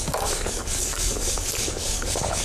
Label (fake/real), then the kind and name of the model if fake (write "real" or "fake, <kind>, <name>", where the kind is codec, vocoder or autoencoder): fake, codec, DAC